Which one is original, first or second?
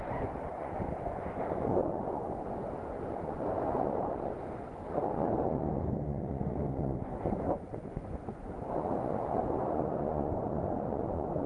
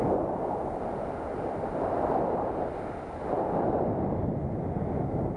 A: second